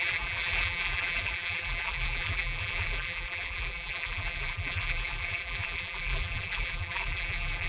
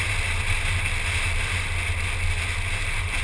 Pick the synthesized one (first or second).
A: first